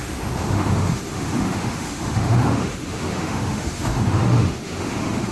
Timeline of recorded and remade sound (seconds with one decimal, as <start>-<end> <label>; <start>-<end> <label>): 0.0-5.3 remade